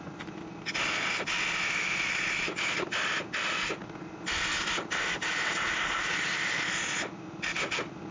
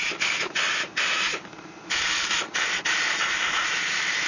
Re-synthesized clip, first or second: second